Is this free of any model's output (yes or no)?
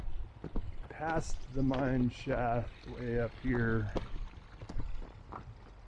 yes